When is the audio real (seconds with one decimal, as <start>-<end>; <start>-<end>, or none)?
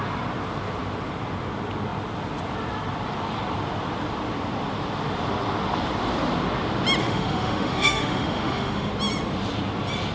0.0-7.0; 8.9-10.1